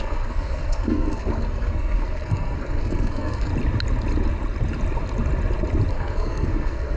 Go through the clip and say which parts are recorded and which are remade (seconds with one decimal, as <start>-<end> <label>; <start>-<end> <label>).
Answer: 0.0-3.5 remade; 3.5-5.9 recorded; 5.9-7.0 remade